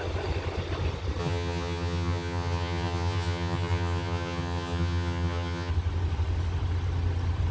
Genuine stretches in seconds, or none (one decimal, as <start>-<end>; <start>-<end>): 0.0-1.2; 5.7-7.5